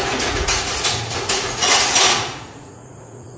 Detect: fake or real fake